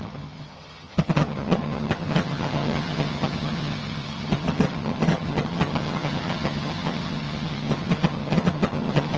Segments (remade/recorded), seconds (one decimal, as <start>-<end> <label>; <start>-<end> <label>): 0.0-9.2 remade